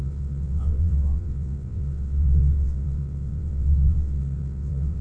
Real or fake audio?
fake